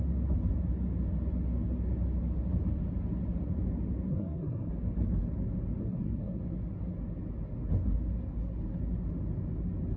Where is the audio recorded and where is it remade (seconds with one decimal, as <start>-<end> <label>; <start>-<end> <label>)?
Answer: 0.0-4.1 recorded; 4.1-4.7 remade; 4.7-5.8 recorded; 5.8-6.4 remade; 6.4-10.0 recorded